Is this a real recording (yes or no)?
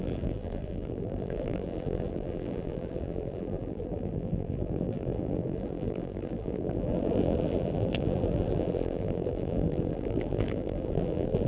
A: no